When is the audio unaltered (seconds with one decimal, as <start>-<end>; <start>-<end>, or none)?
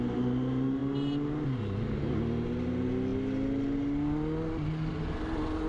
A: 0.0-5.7